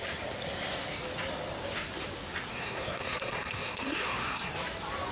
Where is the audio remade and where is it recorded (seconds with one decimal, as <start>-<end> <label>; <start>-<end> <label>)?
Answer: 0.0-2.5 recorded; 2.5-4.5 remade; 4.5-5.1 recorded